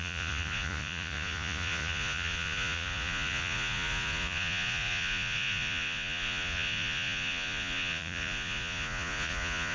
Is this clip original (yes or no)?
no